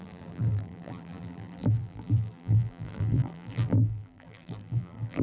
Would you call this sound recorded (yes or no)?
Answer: no